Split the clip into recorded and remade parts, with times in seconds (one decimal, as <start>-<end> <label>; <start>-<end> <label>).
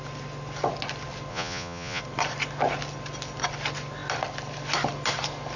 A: 0.0-1.3 recorded; 1.3-2.0 remade; 2.0-5.6 recorded